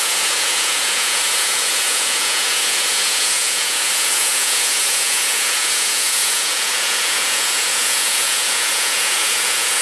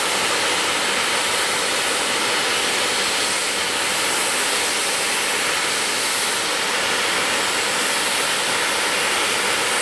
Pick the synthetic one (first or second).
first